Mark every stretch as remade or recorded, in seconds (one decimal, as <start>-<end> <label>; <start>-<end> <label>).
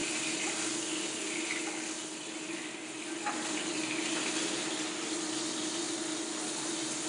0.0-7.1 recorded